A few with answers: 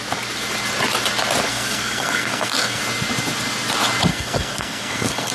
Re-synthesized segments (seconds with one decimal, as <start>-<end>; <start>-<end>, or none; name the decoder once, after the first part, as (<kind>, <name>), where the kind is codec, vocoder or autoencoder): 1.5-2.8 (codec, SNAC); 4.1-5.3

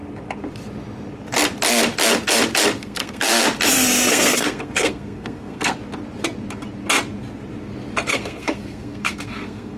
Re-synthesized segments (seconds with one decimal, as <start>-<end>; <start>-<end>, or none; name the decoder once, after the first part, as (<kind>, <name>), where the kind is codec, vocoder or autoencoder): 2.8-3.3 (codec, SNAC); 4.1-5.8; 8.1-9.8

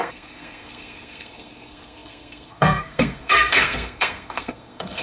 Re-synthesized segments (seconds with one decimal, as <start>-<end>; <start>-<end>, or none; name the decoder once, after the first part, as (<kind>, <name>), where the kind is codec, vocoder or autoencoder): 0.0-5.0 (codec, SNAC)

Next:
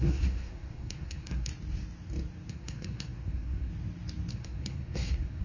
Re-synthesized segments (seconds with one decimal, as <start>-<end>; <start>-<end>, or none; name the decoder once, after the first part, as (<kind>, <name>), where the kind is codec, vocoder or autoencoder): 0.0-1.5 (codec, SNAC); 2.5-3.7; 4.3-5.4

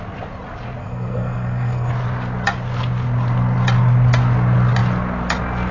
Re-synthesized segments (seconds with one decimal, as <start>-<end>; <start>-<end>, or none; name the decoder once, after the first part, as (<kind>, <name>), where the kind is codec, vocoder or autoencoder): 0.8-1.9 (codec, SNAC)

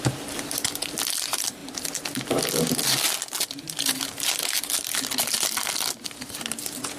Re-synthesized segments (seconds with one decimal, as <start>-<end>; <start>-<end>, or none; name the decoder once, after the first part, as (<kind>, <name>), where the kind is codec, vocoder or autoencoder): none

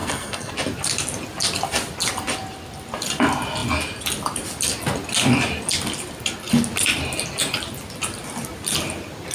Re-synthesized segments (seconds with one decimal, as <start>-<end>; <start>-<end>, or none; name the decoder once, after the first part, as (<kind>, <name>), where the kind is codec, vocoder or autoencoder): 0.0-0.5 (codec, SNAC)

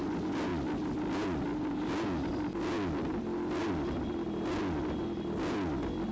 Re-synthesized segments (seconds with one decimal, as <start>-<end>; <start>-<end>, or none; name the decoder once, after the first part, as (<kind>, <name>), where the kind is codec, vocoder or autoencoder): none